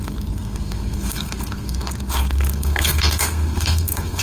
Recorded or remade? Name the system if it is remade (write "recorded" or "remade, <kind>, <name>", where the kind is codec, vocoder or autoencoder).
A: remade, codec, SNAC